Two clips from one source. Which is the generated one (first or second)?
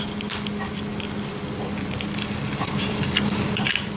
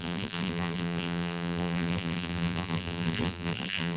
second